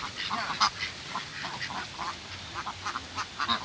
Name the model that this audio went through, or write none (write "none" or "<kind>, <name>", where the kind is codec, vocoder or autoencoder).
none